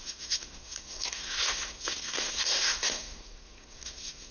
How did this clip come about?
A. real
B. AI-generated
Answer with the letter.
B